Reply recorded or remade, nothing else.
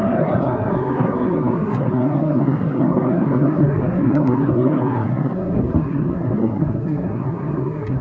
remade